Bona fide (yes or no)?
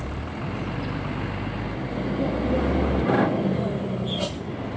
yes